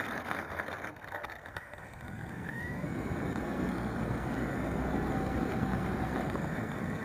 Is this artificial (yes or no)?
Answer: yes